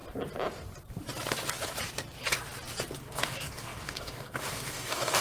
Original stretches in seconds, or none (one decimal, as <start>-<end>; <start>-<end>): 0.0-3.0